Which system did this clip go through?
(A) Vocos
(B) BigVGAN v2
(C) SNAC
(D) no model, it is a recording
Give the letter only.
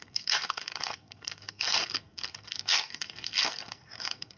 C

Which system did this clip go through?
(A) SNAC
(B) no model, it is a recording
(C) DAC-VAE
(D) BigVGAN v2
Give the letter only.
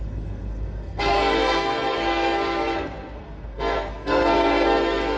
A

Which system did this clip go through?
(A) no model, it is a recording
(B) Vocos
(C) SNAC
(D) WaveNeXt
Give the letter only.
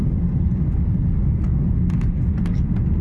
A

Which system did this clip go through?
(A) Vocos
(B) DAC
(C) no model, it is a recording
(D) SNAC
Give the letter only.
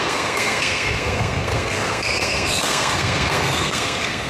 D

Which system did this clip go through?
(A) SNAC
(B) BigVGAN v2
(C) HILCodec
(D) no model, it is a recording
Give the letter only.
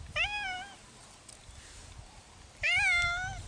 D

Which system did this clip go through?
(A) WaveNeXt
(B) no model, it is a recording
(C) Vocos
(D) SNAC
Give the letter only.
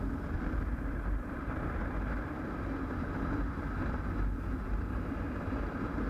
B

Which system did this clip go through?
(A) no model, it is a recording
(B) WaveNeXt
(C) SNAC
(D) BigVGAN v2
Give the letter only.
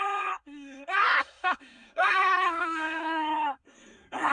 C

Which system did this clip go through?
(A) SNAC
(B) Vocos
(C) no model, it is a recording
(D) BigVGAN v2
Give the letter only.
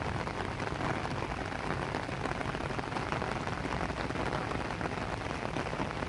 C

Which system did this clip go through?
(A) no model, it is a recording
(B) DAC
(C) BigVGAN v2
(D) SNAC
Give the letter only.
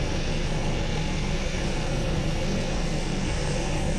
D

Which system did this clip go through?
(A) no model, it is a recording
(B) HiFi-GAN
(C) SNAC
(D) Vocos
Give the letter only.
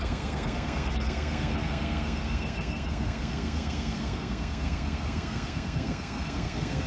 C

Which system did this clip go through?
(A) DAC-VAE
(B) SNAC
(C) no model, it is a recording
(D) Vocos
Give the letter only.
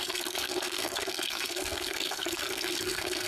B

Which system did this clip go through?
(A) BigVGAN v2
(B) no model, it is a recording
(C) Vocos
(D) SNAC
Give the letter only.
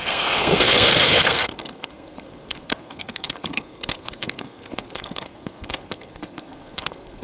D